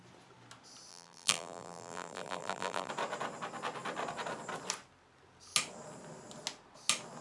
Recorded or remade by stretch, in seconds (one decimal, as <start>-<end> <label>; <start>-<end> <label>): 0.0-0.9 recorded; 0.9-2.9 remade; 2.9-7.2 recorded